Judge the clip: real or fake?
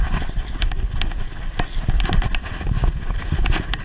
real